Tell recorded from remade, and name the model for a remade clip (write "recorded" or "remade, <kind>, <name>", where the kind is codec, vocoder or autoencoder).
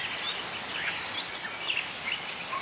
recorded